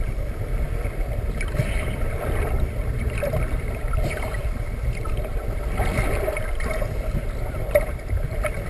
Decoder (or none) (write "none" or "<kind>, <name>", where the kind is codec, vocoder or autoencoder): vocoder, BigVGAN v2